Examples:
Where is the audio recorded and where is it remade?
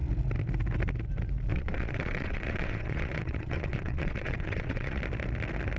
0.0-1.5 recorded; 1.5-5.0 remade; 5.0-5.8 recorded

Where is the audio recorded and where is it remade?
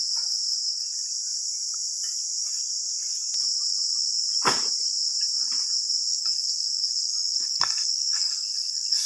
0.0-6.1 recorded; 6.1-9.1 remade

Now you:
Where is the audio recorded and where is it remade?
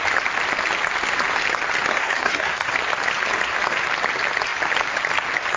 0.0-1.9 recorded; 1.9-2.7 remade; 2.7-5.6 recorded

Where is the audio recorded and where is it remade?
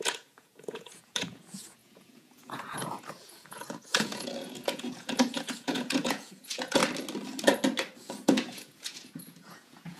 0.0-6.8 remade; 6.8-8.0 recorded; 8.0-10.0 remade